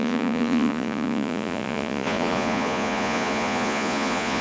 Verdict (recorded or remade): remade